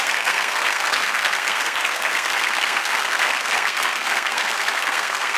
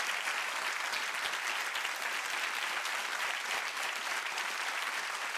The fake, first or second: first